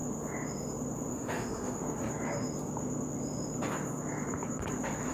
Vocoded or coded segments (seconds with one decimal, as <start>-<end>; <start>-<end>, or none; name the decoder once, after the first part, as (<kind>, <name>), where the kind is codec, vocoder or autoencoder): 1.1-1.8 (autoencoder, DAC-VAE)